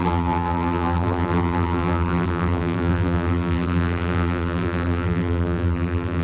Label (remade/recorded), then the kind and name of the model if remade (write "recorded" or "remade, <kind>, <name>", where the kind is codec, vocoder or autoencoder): remade, vocoder, BigVGAN v2